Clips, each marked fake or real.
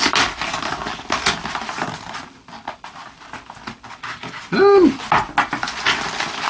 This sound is real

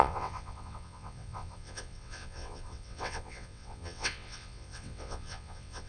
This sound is fake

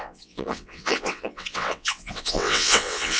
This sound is fake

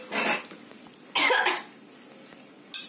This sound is real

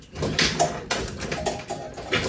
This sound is real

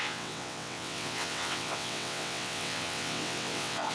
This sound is fake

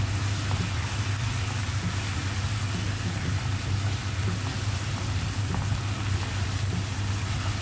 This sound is real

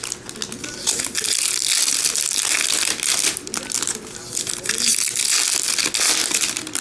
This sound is real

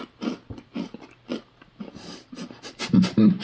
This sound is real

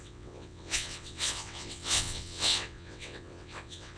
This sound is fake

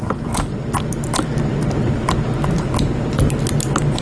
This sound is real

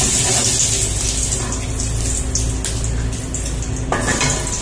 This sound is real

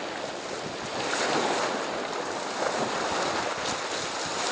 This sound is real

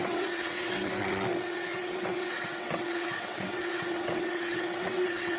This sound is fake